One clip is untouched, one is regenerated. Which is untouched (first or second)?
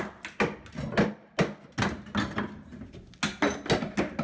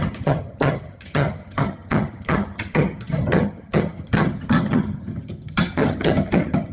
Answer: first